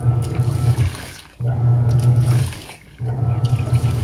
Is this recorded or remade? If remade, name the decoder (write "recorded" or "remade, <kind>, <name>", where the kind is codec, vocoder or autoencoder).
remade, codec, DAC